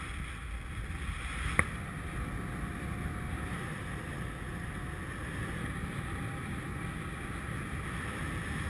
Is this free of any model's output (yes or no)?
yes